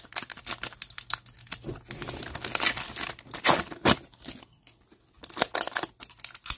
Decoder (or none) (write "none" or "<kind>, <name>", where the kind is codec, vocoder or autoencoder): none